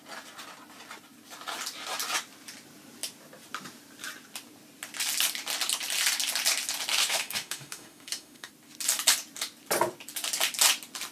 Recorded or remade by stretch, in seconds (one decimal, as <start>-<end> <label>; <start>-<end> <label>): 0.0-7.0 recorded; 7.0-8.5 remade; 8.5-11.1 recorded